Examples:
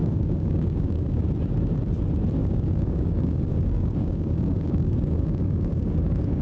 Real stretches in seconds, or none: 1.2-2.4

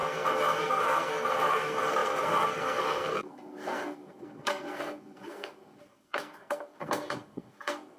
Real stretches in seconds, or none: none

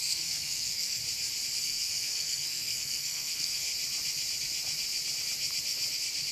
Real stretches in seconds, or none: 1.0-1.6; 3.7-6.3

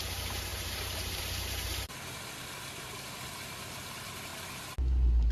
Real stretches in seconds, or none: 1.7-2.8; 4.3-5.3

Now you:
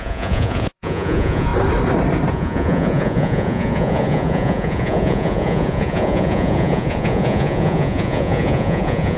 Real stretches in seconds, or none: 1.5-2.3

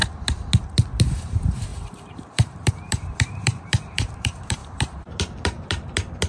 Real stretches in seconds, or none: 0.0-1.0

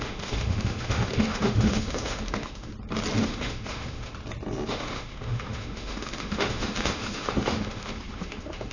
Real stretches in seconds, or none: 2.7-3.2; 4.1-4.7